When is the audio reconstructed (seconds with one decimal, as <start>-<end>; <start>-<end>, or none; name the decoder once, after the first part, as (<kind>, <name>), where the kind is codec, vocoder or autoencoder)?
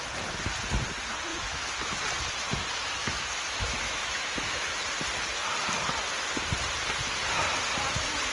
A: 1.3-2.0 (autoencoder, DAC-VAE); 3.0-4.8